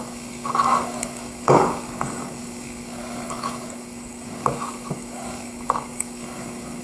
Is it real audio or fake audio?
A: fake